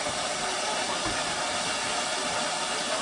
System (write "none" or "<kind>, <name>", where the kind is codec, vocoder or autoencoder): none